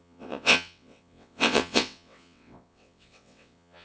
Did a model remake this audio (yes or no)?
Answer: yes